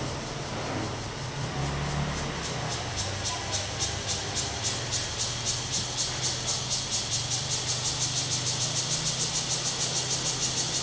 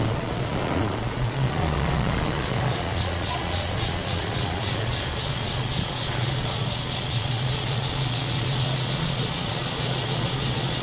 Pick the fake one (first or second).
second